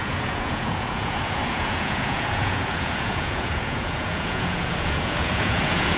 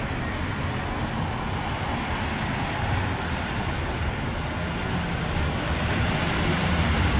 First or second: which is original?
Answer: second